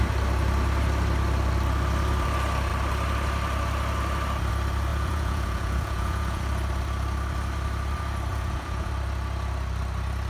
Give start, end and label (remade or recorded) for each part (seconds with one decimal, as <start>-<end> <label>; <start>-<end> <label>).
0.0-4.9 recorded; 4.9-6.4 remade; 6.4-8.3 recorded; 8.3-8.9 remade; 8.9-10.3 recorded